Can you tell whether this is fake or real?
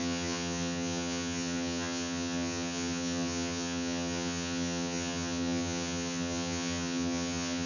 fake